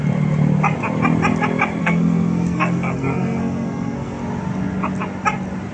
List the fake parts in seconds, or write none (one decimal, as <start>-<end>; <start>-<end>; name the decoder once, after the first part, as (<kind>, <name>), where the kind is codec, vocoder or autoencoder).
1.8-4.2 (codec, SNAC)